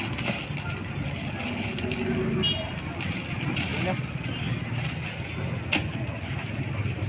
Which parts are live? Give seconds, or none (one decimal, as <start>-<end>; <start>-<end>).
0.0-7.1